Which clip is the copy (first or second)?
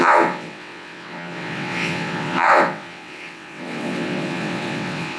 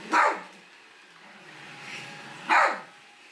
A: first